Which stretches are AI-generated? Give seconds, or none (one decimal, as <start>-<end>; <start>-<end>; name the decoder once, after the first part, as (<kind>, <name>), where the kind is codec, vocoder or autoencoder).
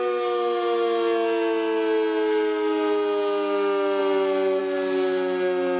4.0-4.6 (vocoder, BigVGAN v2)